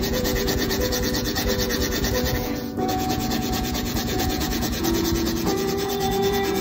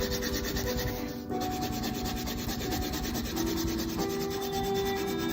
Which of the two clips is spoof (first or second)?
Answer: first